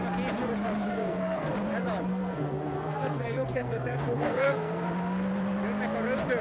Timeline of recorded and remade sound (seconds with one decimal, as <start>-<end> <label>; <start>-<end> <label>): 0.0-0.9 recorded; 0.9-1.5 remade; 1.5-2.1 recorded; 2.1-4.9 remade; 4.9-6.4 recorded